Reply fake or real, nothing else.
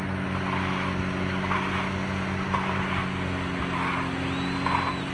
real